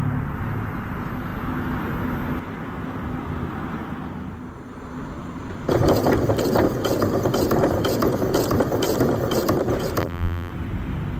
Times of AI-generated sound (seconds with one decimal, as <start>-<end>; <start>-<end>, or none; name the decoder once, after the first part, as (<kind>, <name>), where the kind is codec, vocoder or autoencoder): 10.0-10.5 (vocoder, BigVGAN v2)